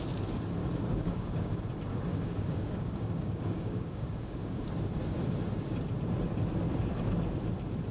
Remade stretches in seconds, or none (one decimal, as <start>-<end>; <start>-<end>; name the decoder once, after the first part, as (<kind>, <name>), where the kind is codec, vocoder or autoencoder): 0.6-1.6 (codec, DAC); 2.1-4.7